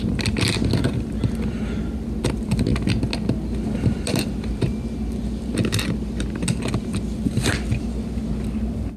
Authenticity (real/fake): real